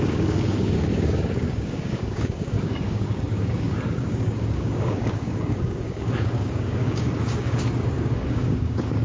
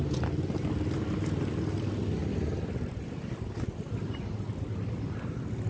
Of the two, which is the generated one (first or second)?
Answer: first